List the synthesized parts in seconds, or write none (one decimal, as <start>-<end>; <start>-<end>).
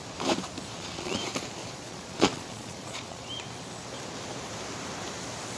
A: 0.7-1.2; 1.6-3.3